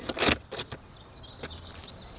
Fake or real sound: real